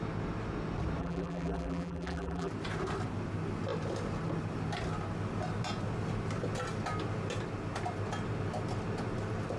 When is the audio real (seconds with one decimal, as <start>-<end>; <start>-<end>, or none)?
0.0-1.0; 2.5-9.6